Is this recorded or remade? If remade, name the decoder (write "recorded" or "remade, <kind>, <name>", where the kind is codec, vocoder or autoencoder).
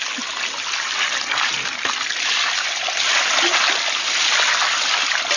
recorded